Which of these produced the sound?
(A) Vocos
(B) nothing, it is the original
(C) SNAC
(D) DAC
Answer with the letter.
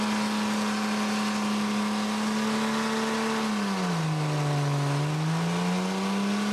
B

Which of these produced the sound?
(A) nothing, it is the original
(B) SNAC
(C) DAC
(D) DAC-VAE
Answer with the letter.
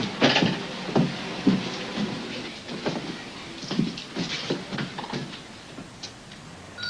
A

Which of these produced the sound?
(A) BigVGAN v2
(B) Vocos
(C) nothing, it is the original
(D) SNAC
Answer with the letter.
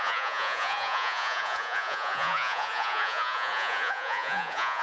B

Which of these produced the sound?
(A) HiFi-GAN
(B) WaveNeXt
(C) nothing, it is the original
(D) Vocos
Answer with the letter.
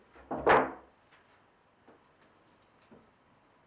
C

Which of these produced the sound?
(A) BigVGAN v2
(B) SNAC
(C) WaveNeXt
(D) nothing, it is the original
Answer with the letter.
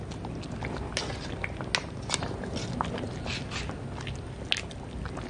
D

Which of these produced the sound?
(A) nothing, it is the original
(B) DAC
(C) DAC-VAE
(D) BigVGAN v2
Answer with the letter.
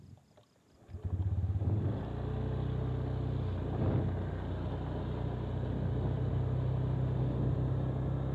A